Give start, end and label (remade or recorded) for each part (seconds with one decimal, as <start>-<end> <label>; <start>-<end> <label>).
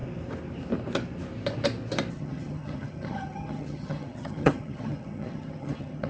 0.0-2.1 recorded; 2.1-6.1 remade